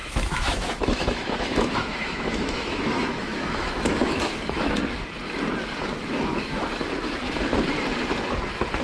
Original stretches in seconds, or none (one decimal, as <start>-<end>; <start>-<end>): 4.8-5.9; 6.6-8.8